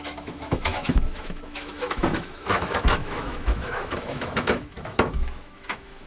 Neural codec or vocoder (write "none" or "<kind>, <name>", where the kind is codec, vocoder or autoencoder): autoencoder, DAC-VAE